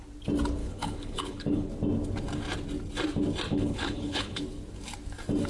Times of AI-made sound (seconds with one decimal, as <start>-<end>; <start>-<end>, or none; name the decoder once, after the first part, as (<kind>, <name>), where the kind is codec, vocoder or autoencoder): 0.6-1.7 (codec, HILCodec); 3.5-4.4